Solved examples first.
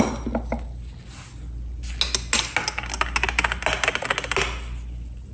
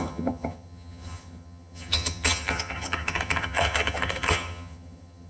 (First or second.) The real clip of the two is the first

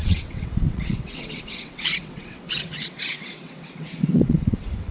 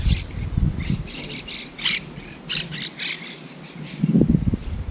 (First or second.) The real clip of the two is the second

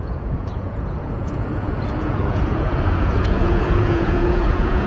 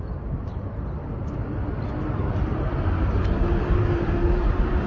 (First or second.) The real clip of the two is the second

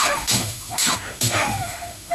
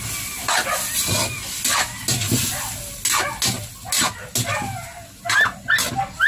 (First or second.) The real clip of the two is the second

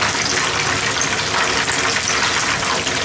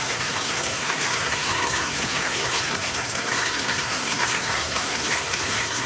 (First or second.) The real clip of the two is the first